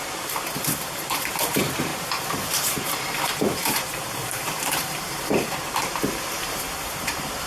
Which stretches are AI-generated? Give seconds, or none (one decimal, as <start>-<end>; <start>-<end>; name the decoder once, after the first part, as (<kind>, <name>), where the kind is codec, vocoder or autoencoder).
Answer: 0.0-7.5 (vocoder, BigVGAN v2)